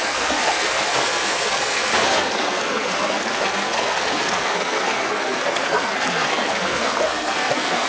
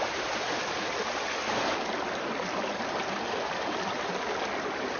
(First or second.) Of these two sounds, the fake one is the first